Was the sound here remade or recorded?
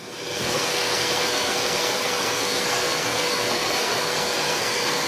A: remade